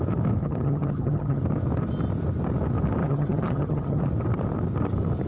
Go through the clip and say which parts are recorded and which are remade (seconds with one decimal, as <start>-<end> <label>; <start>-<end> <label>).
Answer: 0.0-0.4 recorded; 0.4-1.4 remade; 1.4-3.0 recorded; 3.0-4.0 remade; 4.0-5.3 recorded